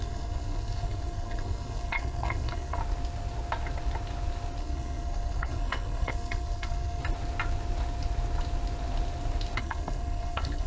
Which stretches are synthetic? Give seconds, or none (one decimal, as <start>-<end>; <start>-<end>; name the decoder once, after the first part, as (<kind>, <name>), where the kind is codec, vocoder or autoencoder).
0.0-2.8 (codec, SNAC); 4.6-7.0; 9.6-10.7